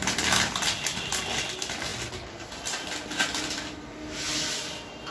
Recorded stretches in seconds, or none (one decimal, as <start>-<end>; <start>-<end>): 0.0-5.1

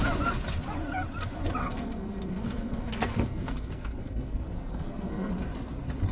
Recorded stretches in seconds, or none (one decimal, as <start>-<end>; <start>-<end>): 0.0-1.6; 5.3-6.1

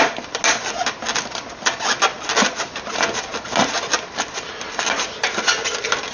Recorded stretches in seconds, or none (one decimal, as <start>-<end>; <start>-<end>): 0.0-6.1

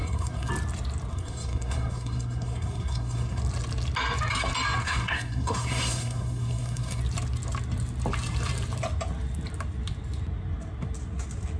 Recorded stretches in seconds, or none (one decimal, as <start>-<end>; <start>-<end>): 0.5-1.1; 3.4-4.8; 7.0-11.6

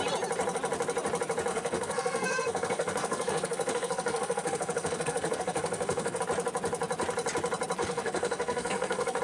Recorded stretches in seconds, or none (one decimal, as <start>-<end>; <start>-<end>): 0.0-1.5; 6.2-7.8

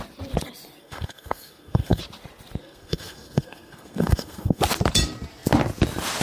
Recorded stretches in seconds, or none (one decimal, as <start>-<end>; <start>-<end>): 0.0-0.8; 2.0-2.6; 4.6-6.2

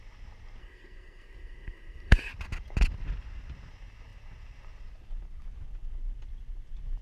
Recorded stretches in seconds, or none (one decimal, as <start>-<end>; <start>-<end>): 0.0-0.6; 2.3-7.0

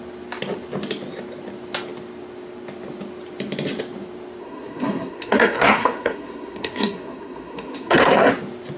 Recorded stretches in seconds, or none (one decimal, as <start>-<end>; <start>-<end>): 0.0-4.4; 8.3-8.8